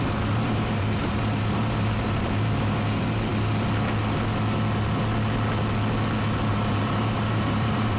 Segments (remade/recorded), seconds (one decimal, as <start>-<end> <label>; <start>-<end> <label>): 0.0-3.3 remade; 3.3-6.5 recorded; 6.5-8.0 remade